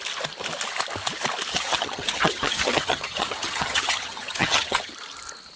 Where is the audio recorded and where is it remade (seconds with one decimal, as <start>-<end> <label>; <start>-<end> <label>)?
0.0-1.5 recorded; 1.5-4.9 remade; 4.9-5.6 recorded